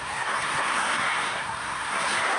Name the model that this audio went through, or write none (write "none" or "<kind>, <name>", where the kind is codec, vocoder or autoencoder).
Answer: codec, SNAC